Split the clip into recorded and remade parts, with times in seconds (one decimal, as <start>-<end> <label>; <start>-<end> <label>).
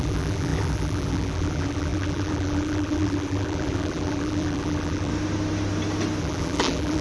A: 0.0-5.1 remade; 5.1-6.2 recorded; 6.2-7.0 remade